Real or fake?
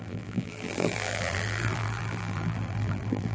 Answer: fake